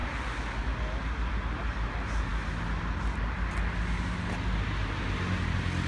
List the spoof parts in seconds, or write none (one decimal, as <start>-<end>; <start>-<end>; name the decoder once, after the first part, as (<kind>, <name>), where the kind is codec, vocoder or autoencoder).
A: none